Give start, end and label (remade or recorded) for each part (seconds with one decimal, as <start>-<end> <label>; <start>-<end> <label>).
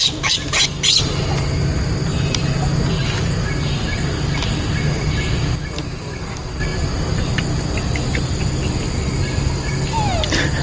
0.0-10.6 recorded